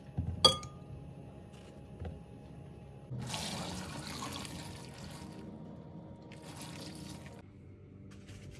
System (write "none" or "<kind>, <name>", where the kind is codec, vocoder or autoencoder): none